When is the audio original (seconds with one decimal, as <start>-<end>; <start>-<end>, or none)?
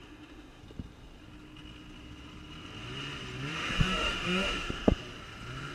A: 0.6-3.5; 5.0-5.7